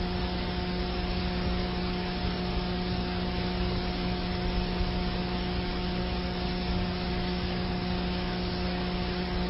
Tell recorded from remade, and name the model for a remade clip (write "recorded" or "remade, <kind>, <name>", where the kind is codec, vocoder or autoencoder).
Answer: remade, codec, DAC